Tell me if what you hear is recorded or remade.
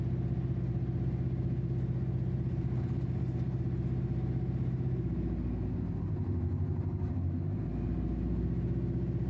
recorded